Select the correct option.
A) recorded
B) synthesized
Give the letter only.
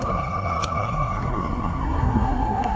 B